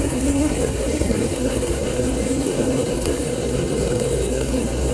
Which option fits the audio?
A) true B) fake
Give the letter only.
B